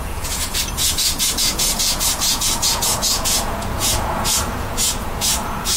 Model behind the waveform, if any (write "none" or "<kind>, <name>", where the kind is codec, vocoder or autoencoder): vocoder, Vocos